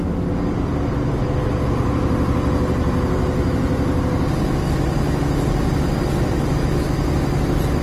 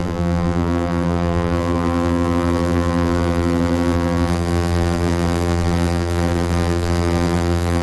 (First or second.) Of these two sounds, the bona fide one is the first